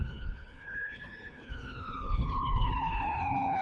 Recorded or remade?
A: remade